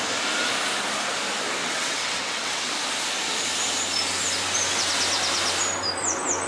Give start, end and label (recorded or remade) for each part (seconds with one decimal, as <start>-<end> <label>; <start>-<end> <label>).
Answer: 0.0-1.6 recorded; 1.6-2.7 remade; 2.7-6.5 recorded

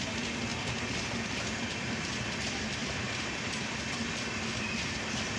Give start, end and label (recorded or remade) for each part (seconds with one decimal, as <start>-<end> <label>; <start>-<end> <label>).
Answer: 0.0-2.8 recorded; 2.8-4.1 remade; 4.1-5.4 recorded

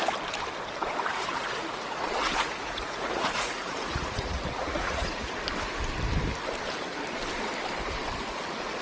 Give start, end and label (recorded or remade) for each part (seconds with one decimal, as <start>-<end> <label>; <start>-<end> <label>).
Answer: 0.0-1.1 recorded; 1.1-5.3 remade; 5.3-8.8 recorded

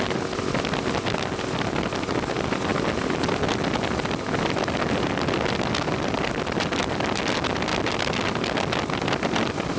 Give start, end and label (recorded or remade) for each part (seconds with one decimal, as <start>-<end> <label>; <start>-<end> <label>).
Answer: 0.0-9.8 recorded